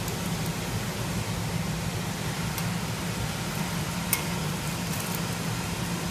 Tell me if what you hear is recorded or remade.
recorded